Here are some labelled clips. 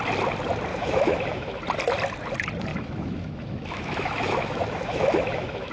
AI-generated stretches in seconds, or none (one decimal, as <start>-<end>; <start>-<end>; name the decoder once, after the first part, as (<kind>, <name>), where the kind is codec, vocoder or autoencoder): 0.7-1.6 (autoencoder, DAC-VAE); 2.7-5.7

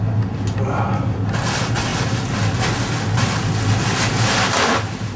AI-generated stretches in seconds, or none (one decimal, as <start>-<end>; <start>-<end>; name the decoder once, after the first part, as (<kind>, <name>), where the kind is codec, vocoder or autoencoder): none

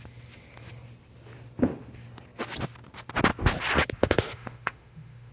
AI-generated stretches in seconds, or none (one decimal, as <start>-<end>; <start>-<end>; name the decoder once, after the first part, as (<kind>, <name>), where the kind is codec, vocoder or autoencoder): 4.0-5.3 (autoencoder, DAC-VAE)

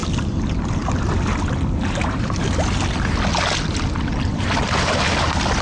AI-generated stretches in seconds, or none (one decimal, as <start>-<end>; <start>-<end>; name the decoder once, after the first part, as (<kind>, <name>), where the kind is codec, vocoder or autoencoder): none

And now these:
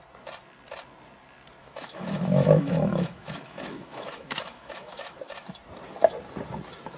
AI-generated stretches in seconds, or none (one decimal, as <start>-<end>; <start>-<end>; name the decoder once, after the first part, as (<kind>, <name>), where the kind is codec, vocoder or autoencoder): 1.6-5.2 (autoencoder, DAC-VAE)